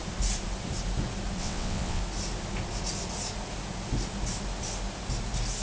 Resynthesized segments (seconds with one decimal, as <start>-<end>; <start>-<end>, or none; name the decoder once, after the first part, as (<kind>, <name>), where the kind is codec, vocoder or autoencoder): 1.4-2.0 (vocoder, WaveNeXt)